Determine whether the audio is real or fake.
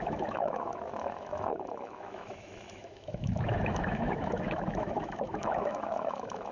fake